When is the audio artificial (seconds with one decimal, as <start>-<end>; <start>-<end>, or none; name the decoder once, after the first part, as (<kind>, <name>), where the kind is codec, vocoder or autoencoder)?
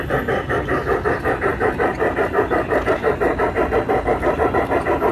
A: none